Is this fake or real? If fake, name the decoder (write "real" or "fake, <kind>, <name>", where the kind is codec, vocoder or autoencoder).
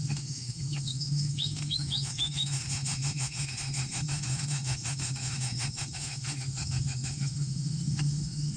fake, autoencoder, DAC-VAE